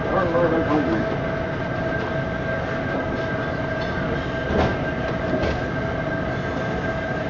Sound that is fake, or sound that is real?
real